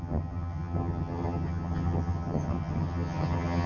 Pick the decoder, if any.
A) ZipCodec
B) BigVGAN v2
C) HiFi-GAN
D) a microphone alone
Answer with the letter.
C